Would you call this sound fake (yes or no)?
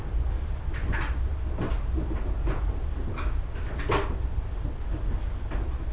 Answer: no